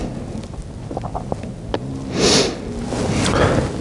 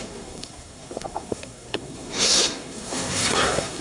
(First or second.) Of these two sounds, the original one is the first